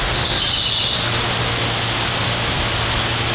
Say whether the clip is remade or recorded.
recorded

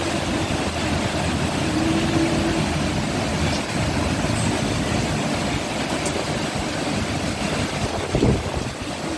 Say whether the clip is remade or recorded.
recorded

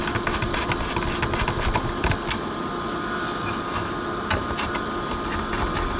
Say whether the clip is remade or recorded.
recorded